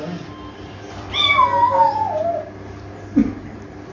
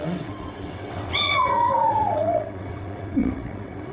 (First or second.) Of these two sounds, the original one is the first